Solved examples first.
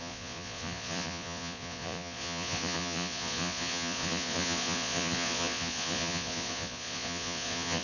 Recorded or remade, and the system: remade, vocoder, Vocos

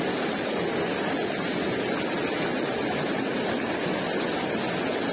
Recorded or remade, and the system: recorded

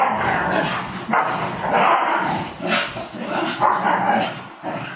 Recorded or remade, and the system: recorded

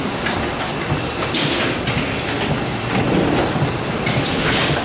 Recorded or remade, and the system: recorded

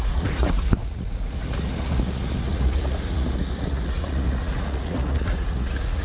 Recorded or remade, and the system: remade, vocoder, Vocos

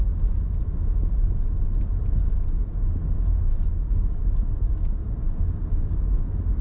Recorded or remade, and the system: recorded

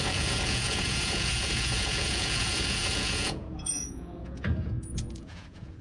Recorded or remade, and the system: remade, vocoder, Vocos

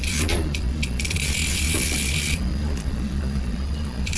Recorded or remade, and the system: remade, vocoder, Vocos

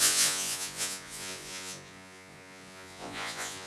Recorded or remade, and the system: remade, vocoder, Vocos